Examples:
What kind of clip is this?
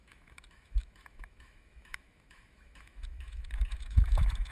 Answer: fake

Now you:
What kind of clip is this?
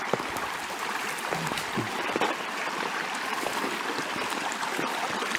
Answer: fake